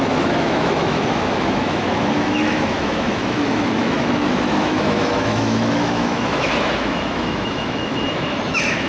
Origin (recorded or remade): remade